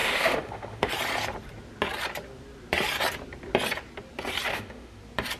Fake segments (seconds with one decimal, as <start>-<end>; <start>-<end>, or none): 0.0-0.9; 4.5-5.0